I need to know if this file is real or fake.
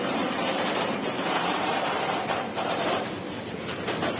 fake